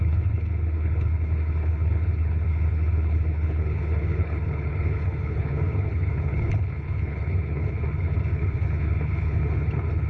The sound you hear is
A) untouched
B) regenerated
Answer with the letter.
B